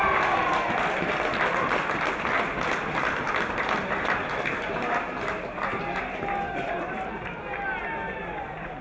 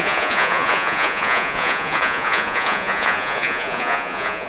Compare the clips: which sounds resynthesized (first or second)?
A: second